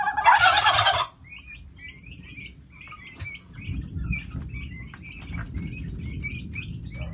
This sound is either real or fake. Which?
real